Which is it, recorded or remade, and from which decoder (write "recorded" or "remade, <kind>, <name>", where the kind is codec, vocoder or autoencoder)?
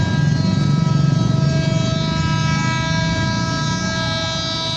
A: recorded